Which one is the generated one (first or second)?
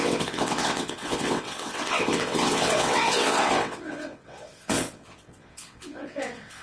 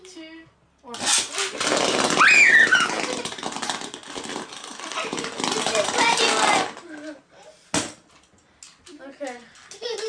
first